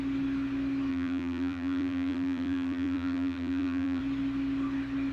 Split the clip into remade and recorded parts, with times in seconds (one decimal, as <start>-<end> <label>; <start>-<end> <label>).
0.0-0.9 recorded; 0.9-4.0 remade; 4.0-5.1 recorded